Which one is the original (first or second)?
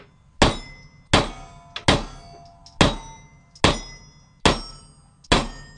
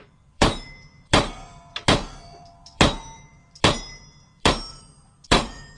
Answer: first